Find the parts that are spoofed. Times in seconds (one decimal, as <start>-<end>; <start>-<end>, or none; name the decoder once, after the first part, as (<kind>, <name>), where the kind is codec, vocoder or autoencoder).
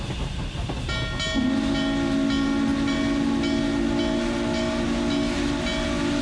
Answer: none